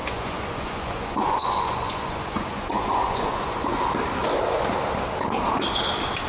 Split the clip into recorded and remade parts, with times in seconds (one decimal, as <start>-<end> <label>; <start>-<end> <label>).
0.0-3.8 remade; 3.8-6.3 recorded